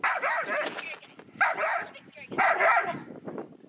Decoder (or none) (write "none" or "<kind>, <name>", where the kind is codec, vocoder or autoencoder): none